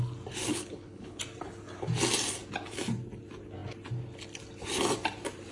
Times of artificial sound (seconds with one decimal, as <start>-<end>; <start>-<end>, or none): 0.5-1.2